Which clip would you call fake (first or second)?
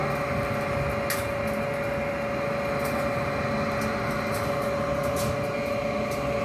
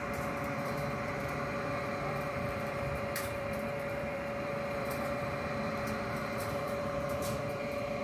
second